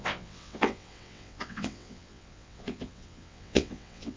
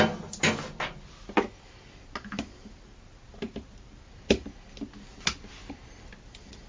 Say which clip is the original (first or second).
second